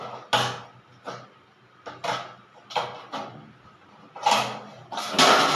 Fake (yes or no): no